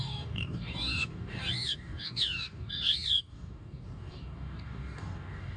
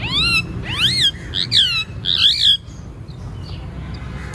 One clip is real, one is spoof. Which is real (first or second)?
second